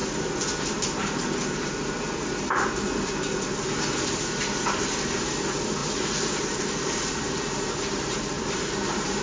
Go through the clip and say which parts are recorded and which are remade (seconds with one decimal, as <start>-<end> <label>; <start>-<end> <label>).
0.0-9.2 remade